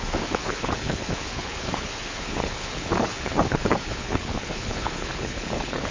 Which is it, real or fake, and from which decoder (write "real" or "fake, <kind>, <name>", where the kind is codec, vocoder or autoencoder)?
fake, codec, HILCodec